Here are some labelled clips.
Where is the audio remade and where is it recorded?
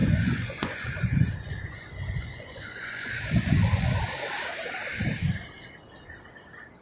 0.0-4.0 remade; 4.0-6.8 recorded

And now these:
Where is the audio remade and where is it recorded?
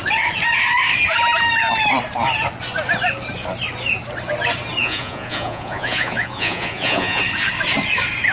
0.0-4.8 recorded; 4.8-7.2 remade; 7.2-8.3 recorded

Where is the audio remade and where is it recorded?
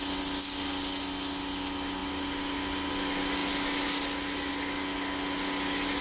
0.0-6.0 recorded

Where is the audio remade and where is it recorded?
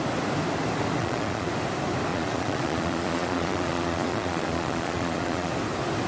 0.0-1.0 recorded; 1.0-1.5 remade; 1.5-2.1 recorded; 2.1-5.5 remade; 5.5-6.1 recorded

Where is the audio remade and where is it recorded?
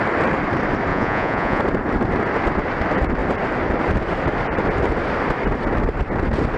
0.0-0.9 recorded; 0.9-1.6 remade; 1.6-6.6 recorded